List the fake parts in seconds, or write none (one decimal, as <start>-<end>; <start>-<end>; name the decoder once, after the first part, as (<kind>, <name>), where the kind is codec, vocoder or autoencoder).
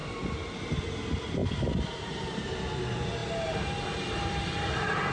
0.0-0.8 (vocoder, BigVGAN v2); 1.4-2.8; 3.2-5.1